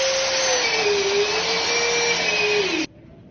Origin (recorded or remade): recorded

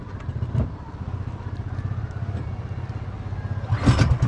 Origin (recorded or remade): recorded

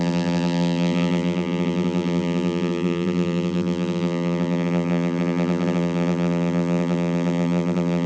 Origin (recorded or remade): remade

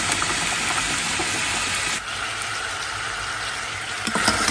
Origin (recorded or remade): recorded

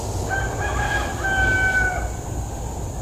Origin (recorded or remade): recorded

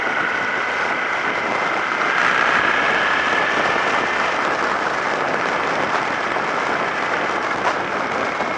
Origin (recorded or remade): recorded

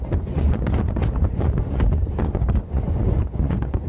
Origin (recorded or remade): remade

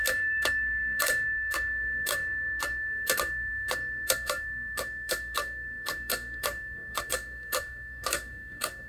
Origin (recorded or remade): remade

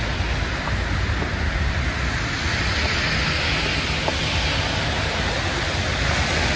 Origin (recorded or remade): recorded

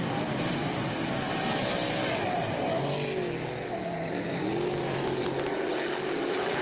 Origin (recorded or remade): recorded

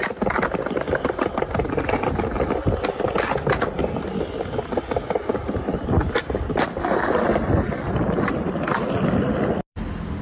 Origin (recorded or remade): recorded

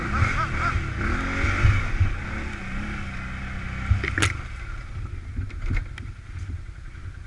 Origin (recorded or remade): recorded